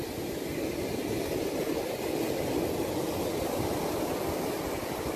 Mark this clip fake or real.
real